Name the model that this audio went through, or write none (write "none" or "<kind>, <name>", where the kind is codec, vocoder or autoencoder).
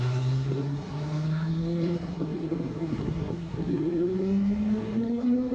codec, SNAC